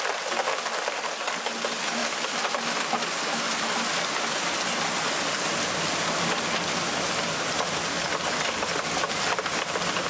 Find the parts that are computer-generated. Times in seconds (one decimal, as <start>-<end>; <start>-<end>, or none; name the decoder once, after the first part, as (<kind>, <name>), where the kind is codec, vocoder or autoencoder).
none